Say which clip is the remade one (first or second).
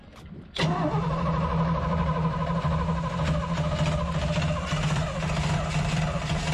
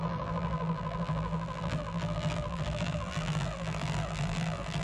second